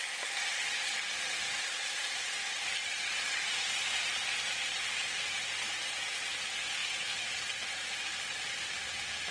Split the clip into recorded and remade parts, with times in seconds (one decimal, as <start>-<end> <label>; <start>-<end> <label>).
0.0-9.3 recorded